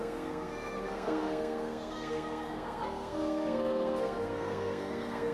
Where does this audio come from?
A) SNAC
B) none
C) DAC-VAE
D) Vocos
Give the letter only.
A